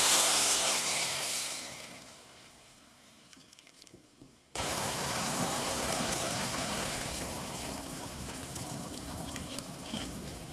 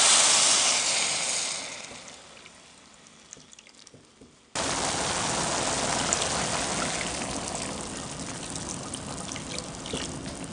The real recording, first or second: second